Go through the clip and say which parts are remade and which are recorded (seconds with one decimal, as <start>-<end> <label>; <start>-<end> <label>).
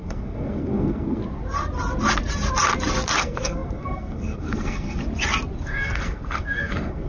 0.0-1.2 remade; 1.2-3.2 recorded; 3.2-5.0 remade; 5.0-5.6 recorded; 5.6-7.1 remade